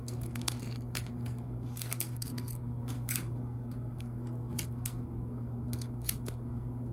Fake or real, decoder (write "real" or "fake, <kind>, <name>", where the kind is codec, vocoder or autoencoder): fake, codec, SNAC